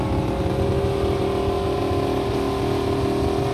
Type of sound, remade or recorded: recorded